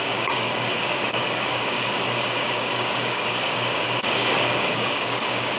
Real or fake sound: fake